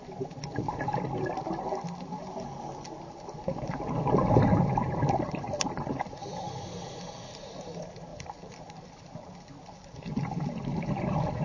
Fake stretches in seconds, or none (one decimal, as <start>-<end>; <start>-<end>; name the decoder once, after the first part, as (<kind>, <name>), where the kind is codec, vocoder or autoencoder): none